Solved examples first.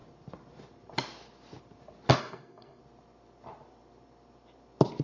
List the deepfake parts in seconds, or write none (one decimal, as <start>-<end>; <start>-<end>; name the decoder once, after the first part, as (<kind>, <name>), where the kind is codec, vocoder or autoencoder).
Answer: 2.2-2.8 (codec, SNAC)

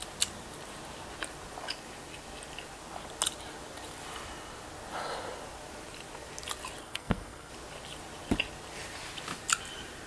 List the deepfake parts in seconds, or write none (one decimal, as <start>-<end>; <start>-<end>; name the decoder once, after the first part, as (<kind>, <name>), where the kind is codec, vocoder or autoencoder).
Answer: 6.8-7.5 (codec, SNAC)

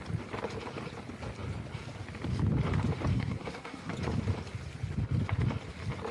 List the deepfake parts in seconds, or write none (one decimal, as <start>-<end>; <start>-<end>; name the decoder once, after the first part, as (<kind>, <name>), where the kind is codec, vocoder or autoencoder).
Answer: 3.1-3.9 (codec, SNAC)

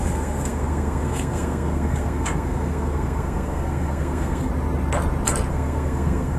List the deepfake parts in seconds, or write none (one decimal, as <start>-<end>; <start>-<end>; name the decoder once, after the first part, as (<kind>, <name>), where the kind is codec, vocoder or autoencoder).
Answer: 0.0-4.5 (codec, SNAC); 5.5-6.4

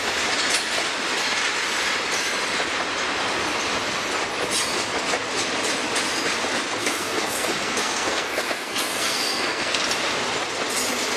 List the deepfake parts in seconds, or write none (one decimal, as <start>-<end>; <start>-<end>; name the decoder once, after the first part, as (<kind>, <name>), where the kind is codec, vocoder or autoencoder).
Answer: 6.8-9.8 (codec, SNAC)

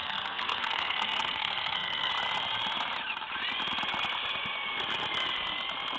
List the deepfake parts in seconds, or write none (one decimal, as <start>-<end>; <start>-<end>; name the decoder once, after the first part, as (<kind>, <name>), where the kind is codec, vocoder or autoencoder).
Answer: 0.0-2.1 (codec, SNAC)

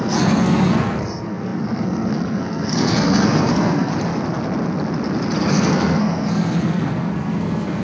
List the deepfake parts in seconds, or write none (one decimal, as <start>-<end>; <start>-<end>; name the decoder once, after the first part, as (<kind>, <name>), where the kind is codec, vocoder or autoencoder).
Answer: 0.0-3.9 (codec, SNAC); 5.5-7.8

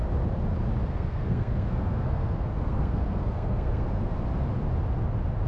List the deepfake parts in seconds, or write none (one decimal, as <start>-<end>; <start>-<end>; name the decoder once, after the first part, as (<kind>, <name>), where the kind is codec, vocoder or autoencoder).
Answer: 0.9-4.2 (codec, SNAC)